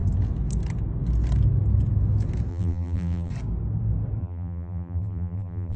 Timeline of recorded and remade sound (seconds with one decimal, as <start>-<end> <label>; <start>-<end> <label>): 0.0-2.5 recorded; 2.5-3.3 remade; 3.3-4.2 recorded; 4.2-5.8 remade